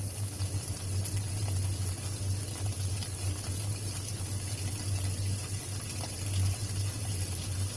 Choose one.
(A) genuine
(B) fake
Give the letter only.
A